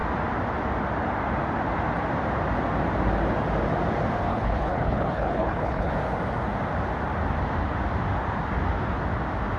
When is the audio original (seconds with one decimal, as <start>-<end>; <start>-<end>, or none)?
0.0-4.3; 5.9-9.6